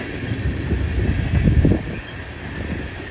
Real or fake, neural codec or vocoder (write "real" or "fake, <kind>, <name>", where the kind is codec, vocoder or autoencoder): real